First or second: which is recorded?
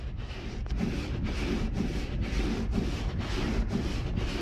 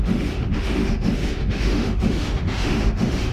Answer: first